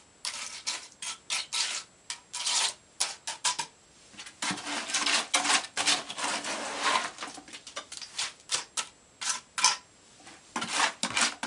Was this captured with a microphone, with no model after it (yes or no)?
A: yes